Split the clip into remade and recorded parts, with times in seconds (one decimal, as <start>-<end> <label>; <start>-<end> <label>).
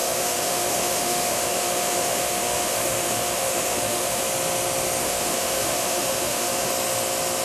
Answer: 0.0-4.2 remade; 4.2-5.0 recorded; 5.0-6.7 remade; 6.7-7.4 recorded